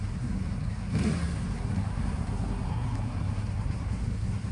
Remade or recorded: remade